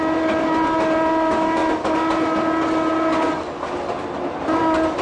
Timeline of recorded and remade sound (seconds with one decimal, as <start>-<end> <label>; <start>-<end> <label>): 0.0-5.0 recorded